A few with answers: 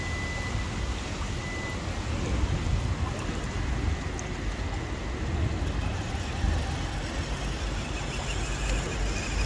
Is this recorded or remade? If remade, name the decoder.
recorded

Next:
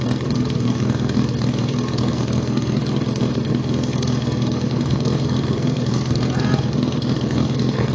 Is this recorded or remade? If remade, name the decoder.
remade, codec, SNAC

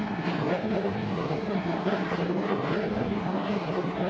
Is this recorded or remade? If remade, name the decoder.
remade, codec, SNAC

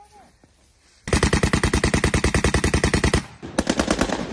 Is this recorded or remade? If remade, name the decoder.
recorded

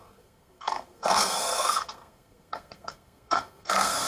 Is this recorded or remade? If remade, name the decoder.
remade, codec, SNAC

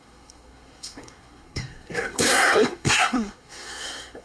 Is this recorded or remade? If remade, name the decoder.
remade, codec, SNAC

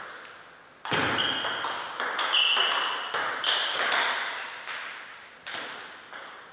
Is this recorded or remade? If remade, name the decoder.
recorded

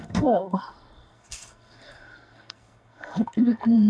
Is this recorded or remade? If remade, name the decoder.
remade, codec, SNAC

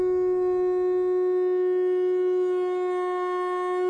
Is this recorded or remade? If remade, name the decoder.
recorded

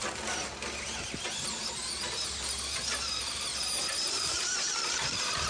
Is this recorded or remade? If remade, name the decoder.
recorded